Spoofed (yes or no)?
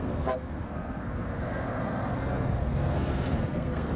yes